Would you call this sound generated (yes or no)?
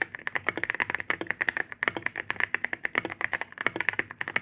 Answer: no